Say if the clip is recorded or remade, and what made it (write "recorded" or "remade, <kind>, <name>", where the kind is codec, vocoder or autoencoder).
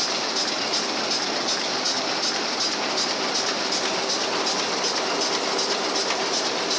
recorded